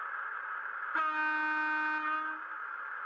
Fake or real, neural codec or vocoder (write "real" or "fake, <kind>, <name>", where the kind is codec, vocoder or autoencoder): real